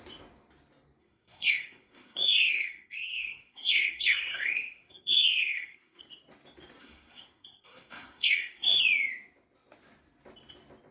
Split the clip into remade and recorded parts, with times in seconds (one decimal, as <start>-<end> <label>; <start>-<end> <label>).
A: 0.0-1.0 recorded; 1.0-6.0 remade; 6.0-6.8 recorded; 6.8-8.8 remade; 8.8-10.9 recorded